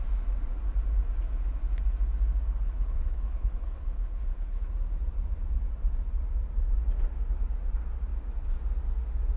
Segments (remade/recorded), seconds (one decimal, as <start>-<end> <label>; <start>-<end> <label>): 0.0-2.6 recorded; 2.6-4.7 remade; 4.7-9.4 recorded